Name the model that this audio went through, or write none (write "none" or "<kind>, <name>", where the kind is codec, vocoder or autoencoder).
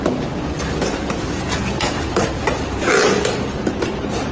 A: none